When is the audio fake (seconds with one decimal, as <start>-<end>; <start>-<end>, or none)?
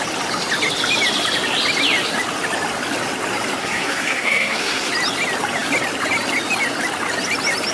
3.6-4.9